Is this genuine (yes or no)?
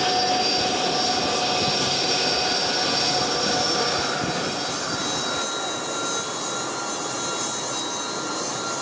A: yes